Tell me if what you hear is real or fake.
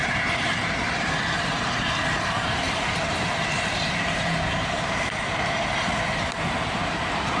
fake